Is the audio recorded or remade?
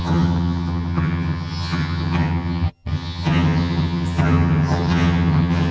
remade